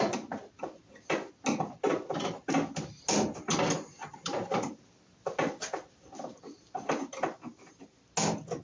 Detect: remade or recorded recorded